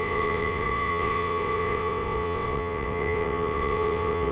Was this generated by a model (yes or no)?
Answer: yes